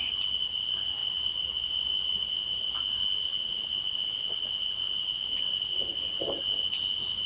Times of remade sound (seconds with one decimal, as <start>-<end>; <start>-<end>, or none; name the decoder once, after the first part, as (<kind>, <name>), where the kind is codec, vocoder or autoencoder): none